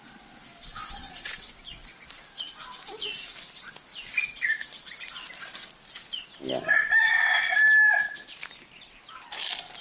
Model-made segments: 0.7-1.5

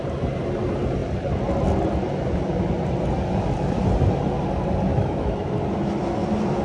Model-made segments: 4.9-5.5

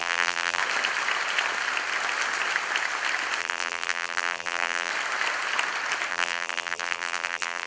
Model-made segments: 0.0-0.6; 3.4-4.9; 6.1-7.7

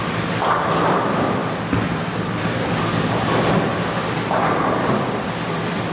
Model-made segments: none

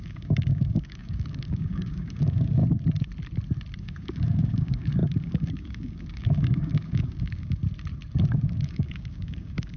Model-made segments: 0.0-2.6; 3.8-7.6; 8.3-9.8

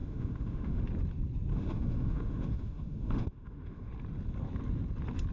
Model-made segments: 0.0-0.8; 1.5-3.9

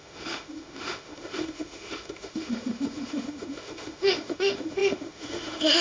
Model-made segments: 0.0-5.8